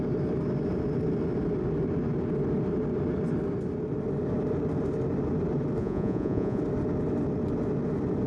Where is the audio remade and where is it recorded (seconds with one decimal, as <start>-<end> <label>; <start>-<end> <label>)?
0.0-5.8 recorded; 5.8-6.6 remade; 6.6-8.3 recorded